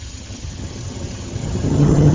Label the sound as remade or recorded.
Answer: remade